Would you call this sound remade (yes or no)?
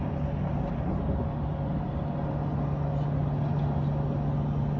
no